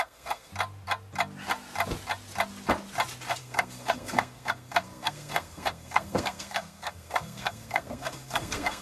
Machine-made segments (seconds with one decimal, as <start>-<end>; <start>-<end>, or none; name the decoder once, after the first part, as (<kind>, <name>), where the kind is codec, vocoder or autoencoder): 0.0-0.5 (codec, SNAC); 3.4-8.8